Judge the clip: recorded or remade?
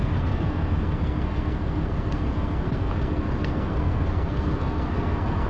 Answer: remade